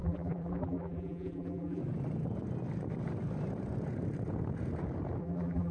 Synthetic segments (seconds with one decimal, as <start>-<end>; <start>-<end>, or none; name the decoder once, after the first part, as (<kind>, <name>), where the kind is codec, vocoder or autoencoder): 0.0-1.8 (vocoder, BigVGAN v2); 5.2-5.7